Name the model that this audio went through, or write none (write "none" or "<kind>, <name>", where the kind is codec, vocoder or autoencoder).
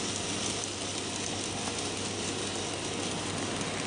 none